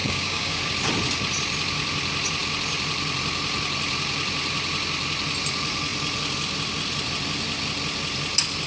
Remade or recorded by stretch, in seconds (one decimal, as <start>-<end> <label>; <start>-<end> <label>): 0.0-0.6 remade; 0.6-8.7 recorded